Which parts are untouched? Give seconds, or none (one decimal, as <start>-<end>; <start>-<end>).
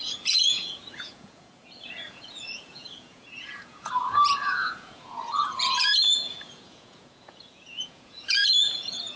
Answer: none